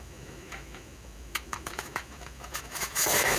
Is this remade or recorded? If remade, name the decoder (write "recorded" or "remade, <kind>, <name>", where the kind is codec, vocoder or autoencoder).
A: remade, autoencoder, DAC-VAE